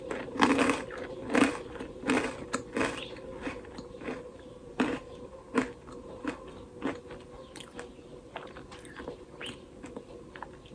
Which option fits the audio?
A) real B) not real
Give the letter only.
A